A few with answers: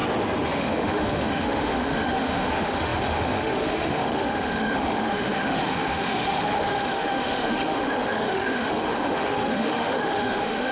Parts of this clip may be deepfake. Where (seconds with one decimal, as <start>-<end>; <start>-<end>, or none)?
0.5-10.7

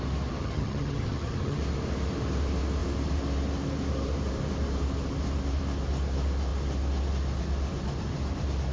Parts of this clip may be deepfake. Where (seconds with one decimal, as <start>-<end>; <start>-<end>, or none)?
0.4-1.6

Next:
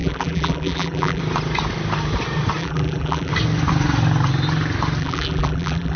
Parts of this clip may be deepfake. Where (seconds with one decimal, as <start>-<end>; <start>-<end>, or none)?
0.0-1.2; 2.6-3.3; 5.0-6.0

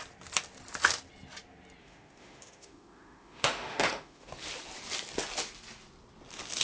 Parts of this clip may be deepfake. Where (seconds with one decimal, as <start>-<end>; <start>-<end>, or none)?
1.8-4.3

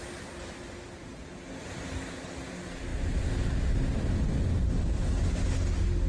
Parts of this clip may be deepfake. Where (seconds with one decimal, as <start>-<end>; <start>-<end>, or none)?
none